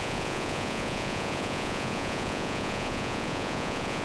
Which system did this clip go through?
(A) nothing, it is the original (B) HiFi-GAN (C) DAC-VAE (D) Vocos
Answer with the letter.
D